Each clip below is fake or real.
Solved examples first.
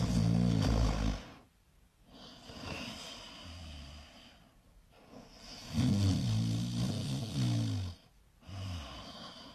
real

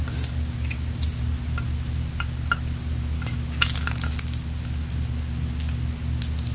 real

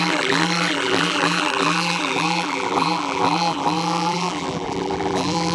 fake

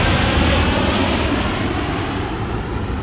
real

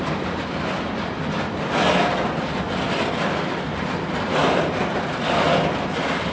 real